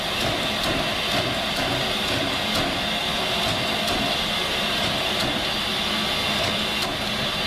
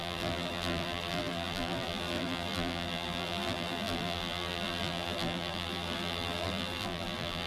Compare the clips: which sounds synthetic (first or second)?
second